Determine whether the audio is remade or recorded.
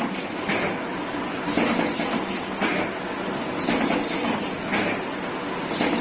recorded